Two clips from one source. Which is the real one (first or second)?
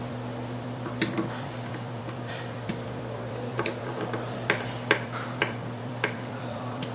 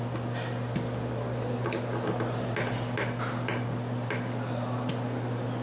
second